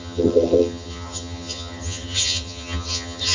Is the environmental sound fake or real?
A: fake